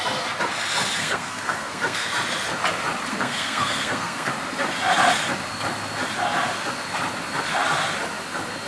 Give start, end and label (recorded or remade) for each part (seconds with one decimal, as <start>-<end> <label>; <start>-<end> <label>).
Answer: 0.0-1.0 recorded; 1.0-2.1 remade; 2.1-3.1 recorded; 3.1-4.3 remade; 4.3-8.7 recorded

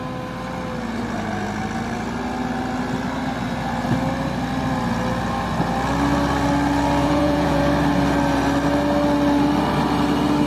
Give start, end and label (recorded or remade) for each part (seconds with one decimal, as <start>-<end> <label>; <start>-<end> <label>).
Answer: 0.0-7.0 recorded; 7.0-7.6 remade; 7.6-10.5 recorded

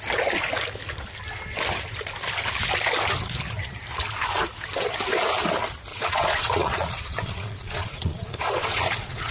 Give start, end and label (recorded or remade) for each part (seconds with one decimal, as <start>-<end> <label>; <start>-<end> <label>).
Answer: 0.0-5.9 recorded; 5.9-9.3 remade

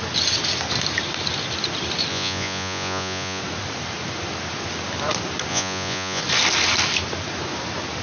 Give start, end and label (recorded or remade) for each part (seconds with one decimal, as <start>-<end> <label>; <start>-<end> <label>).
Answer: 0.0-2.1 recorded; 2.1-3.4 remade; 3.4-5.5 recorded; 5.5-6.2 remade; 6.2-8.0 recorded